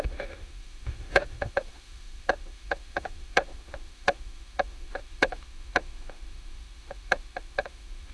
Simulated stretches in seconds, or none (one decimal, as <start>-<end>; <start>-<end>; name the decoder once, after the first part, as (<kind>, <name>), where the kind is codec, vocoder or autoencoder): 0.0-8.1 (autoencoder, DAC-VAE)